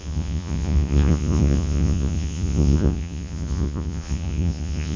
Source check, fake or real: fake